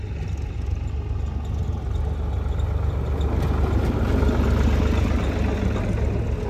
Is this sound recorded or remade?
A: recorded